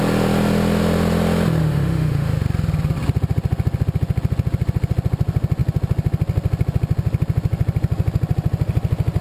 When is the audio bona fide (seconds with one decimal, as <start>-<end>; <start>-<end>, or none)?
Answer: 0.0-1.6; 2.4-9.2